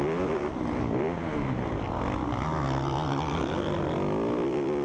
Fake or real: real